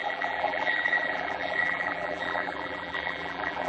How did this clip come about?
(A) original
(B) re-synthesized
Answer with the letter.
B